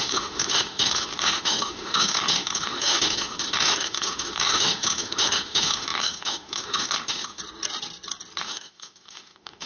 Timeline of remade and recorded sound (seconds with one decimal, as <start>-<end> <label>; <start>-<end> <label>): 0.0-7.4 remade; 7.4-8.4 recorded; 8.4-9.7 remade